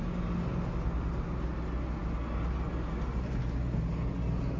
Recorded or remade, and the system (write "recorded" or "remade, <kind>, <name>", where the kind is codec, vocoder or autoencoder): recorded